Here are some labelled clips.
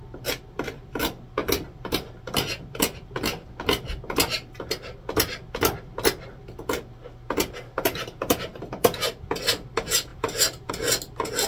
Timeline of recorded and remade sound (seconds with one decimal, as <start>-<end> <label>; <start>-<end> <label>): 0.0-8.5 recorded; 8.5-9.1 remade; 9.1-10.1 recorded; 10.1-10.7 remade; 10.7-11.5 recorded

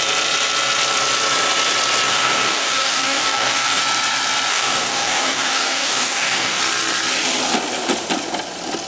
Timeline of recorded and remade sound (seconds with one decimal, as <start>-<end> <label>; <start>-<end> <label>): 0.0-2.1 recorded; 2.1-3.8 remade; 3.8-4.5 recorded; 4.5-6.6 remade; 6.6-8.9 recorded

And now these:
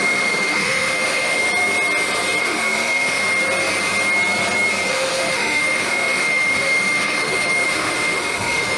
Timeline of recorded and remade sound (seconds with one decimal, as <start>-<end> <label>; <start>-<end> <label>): 0.0-1.4 remade; 1.4-2.4 recorded; 2.4-3.2 remade; 3.2-4.9 recorded; 4.9-8.8 remade

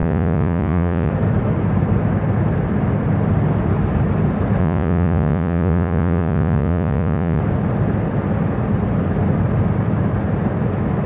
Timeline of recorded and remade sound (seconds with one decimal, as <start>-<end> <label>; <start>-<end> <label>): 0.0-1.1 remade; 1.1-4.6 recorded; 4.6-7.4 remade; 7.4-11.1 recorded

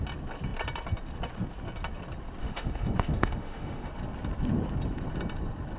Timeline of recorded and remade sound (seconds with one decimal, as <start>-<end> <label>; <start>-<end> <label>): 0.0-2.4 recorded; 2.4-3.9 remade; 3.9-5.8 recorded

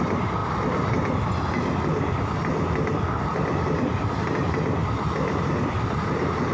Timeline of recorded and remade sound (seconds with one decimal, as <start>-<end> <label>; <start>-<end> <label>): 0.0-6.5 recorded